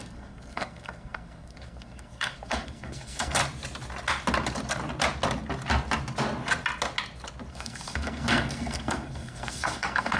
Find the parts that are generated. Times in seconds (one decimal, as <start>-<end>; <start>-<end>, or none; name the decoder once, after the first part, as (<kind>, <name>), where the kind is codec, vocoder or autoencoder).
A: 0.0-3.4 (codec, SNAC); 7.5-10.2